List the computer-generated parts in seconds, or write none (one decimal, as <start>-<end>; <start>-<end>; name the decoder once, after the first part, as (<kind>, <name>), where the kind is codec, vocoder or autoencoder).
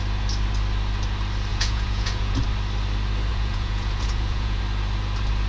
1.5-2.4 (vocoder, Vocos); 3.3-4.6